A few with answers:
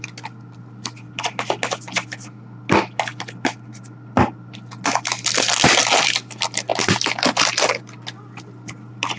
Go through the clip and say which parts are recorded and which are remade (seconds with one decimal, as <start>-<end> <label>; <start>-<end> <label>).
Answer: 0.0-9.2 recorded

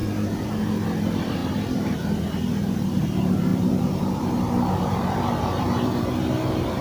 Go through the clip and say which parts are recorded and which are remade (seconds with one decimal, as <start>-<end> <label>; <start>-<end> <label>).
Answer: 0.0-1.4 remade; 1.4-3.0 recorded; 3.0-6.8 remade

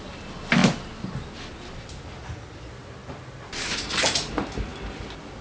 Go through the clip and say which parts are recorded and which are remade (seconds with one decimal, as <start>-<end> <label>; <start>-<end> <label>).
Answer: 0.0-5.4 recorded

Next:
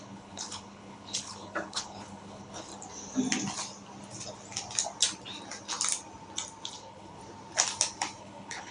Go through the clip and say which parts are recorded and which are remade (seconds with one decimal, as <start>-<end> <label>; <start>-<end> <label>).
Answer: 0.0-2.7 remade; 2.7-6.7 recorded; 6.7-7.2 remade; 7.2-8.2 recorded; 8.2-8.7 remade

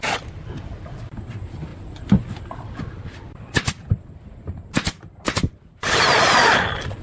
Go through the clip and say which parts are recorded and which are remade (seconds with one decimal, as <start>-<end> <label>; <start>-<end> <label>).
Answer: 0.0-7.0 recorded